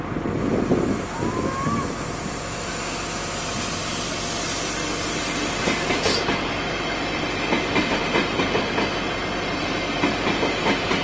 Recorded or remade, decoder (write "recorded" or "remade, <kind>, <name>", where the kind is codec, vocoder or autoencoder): recorded